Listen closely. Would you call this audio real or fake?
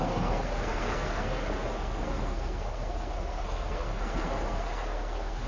fake